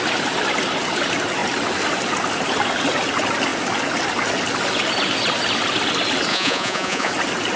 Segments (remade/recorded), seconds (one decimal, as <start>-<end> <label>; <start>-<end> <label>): 0.0-6.3 recorded; 6.3-7.1 remade; 7.1-7.6 recorded